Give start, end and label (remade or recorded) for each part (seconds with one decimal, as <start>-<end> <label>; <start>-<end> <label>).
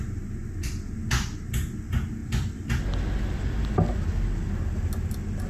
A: 0.0-5.5 recorded